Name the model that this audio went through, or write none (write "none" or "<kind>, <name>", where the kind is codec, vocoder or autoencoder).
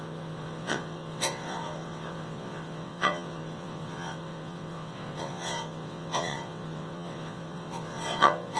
vocoder, WaveNeXt